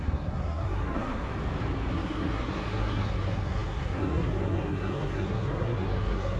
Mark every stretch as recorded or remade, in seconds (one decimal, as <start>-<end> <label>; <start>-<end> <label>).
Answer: 0.0-1.3 remade; 1.3-1.9 recorded; 1.9-6.4 remade